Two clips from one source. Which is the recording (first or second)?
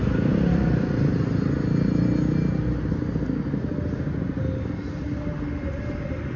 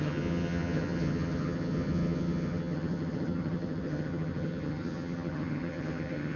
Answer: first